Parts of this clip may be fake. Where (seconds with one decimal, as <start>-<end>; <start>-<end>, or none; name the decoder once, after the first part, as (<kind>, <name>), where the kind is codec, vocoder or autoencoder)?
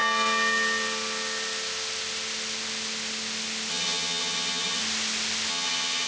3.7-4.8 (vocoder, HiFi-GAN); 5.5-6.1